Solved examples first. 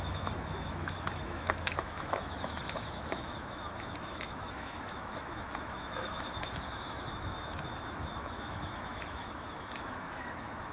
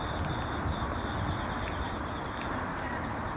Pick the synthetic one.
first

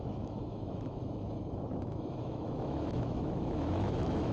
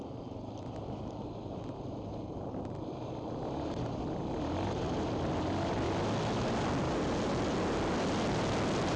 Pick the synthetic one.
first